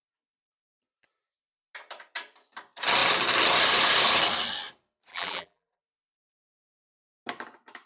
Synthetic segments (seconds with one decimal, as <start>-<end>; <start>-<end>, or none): 5.1-5.8